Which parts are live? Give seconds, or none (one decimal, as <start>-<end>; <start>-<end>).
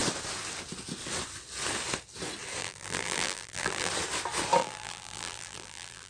0.0-2.6; 3.9-4.6